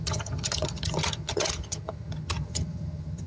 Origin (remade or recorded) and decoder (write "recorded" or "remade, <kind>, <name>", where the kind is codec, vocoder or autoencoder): remade, vocoder, HiFi-GAN